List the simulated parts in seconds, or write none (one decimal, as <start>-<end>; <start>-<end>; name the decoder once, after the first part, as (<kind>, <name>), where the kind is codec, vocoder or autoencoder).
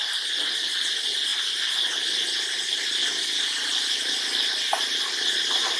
none